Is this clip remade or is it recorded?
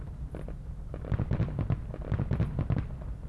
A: recorded